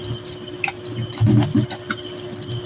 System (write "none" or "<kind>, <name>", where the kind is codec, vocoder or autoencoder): vocoder, BigVGAN v2